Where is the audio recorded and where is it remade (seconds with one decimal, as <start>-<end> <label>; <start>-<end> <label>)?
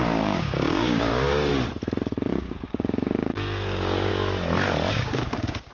0.0-1.5 remade; 1.5-2.3 recorded; 2.3-4.1 remade; 4.1-4.9 recorded; 4.9-5.7 remade